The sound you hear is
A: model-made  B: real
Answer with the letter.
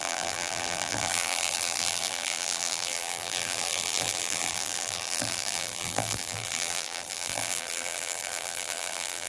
A